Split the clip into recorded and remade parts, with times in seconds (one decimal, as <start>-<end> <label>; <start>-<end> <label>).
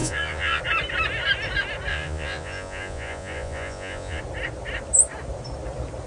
0.0-0.6 remade; 0.6-1.9 recorded; 1.9-4.2 remade; 4.2-6.1 recorded